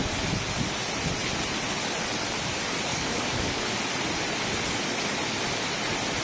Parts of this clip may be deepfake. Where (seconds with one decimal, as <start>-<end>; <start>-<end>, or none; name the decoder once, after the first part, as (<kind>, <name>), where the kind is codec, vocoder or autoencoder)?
2.9-3.6 (codec, DAC)